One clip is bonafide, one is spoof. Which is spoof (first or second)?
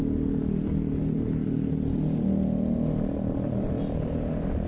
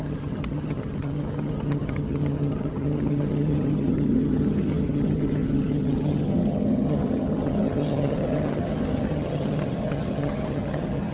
second